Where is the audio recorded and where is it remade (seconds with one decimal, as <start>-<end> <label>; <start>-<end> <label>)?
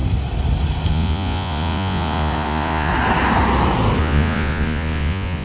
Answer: 0.0-0.9 recorded; 0.9-2.9 remade; 2.9-4.0 recorded; 4.0-5.4 remade